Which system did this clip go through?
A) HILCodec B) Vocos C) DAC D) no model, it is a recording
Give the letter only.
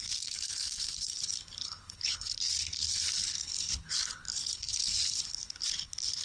A